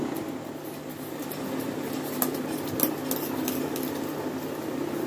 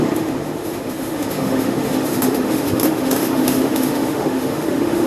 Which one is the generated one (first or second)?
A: second